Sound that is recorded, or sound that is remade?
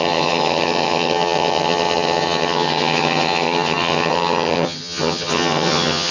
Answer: remade